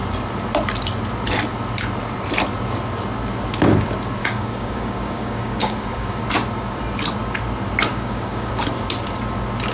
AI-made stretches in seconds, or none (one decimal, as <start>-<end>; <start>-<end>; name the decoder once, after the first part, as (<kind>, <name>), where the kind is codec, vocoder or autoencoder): 4.2-6.2 (codec, DAC); 7.9-8.5